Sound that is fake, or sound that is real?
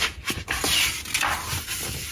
real